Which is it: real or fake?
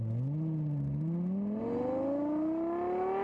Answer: real